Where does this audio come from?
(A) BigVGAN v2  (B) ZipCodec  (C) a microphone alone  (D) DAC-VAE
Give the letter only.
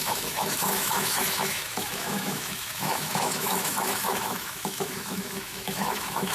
D